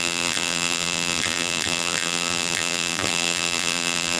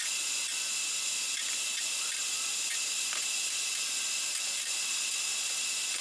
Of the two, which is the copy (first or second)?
first